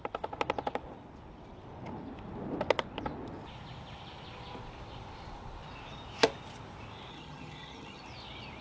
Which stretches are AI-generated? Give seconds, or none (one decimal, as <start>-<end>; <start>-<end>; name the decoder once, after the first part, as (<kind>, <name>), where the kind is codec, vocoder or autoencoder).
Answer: 7.1-8.0 (vocoder, HiFi-GAN)